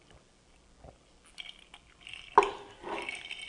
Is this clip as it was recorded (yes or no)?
yes